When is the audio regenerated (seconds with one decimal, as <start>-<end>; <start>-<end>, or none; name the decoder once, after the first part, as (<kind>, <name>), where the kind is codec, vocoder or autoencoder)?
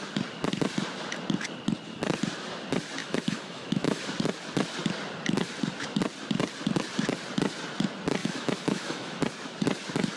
3.0-4.0 (autoencoder, DAC-VAE); 8.2-9.2